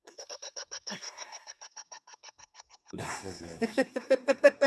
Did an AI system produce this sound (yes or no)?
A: yes